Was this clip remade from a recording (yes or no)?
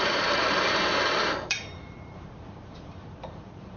yes